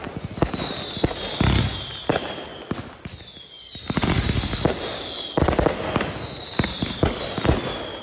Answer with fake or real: real